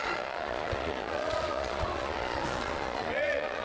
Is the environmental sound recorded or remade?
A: remade